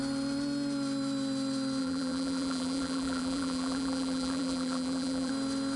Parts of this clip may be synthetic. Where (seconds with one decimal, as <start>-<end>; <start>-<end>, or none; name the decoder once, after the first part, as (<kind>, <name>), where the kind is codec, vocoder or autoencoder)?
1.8-5.3 (vocoder, BigVGAN v2)